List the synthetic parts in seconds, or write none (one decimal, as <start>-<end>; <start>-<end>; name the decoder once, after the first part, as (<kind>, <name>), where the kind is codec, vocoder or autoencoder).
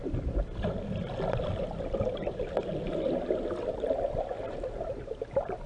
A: none